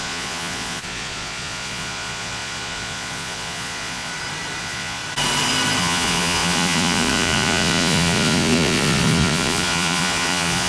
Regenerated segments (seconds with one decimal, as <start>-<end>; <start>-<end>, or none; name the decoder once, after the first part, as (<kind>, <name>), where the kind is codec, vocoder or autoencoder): 0.0-4.1 (vocoder, Vocos); 4.6-5.0; 5.8-10.7